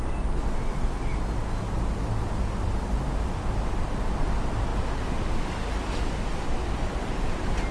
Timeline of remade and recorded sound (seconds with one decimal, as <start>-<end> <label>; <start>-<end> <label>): 0.0-7.7 recorded